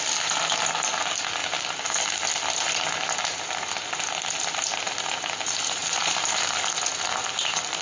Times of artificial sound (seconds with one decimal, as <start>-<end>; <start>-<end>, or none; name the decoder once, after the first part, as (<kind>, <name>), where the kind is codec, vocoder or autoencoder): none